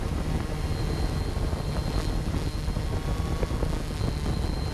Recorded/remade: recorded